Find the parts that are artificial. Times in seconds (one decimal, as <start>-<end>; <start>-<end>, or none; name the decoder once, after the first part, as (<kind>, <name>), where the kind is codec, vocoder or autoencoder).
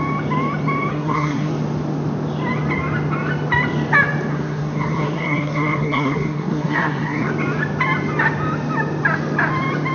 0.9-1.5 (codec, SNAC); 4.3-7.3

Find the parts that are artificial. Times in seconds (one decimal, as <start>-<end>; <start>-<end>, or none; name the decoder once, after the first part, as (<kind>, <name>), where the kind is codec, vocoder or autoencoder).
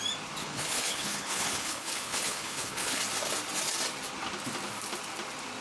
0.4-3.0 (codec, HILCodec)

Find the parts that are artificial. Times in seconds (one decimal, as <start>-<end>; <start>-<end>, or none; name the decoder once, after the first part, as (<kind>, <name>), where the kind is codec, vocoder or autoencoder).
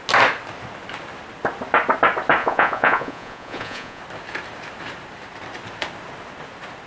2.4-4.0 (vocoder, Vocos)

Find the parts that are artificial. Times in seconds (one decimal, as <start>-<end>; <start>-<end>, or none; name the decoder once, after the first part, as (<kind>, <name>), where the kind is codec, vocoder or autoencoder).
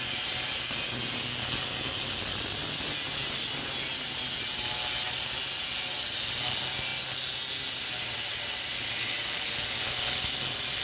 none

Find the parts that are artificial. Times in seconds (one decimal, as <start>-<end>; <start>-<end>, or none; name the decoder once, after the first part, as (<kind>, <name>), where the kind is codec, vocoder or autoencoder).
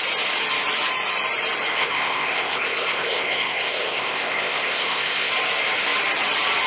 1.7-5.3 (codec, ZipCodec)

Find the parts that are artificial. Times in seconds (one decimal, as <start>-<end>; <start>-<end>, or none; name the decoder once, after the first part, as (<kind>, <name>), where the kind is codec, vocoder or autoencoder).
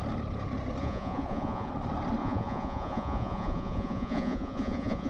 0.8-1.7 (vocoder, Vocos); 2.2-5.1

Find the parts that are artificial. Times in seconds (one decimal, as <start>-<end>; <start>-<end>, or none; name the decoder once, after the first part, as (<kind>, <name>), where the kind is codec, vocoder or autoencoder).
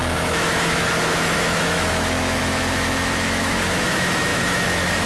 0.0-5.1 (autoencoder, DAC-VAE)